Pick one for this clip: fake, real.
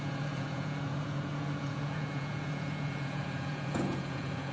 fake